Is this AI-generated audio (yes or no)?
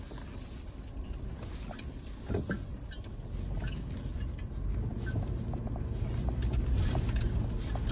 no